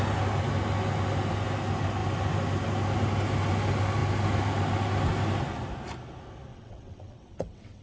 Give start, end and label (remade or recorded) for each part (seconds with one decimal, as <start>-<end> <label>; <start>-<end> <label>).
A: 0.0-6.5 recorded; 6.5-7.8 remade